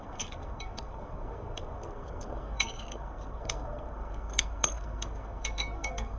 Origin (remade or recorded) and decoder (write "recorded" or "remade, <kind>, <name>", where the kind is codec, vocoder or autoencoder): remade, codec, SNAC